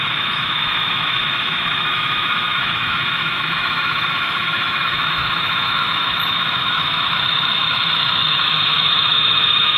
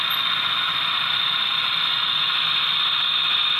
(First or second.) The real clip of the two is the second